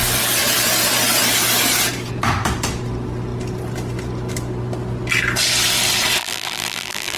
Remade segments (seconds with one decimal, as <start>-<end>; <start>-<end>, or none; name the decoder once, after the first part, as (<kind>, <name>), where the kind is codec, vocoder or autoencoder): 6.2-7.2 (vocoder, BigVGAN v2)